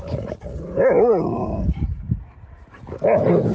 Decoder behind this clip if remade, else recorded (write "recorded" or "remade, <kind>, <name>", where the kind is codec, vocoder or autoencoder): recorded